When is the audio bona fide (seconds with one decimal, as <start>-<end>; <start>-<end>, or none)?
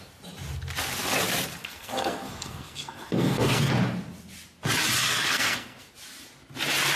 0.0-1.6; 3.7-5.1; 5.9-7.0